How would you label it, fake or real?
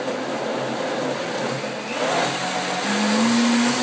real